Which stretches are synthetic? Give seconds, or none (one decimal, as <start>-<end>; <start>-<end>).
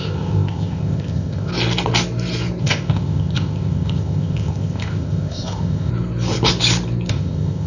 0.0-1.5; 2.6-5.9; 7.1-7.7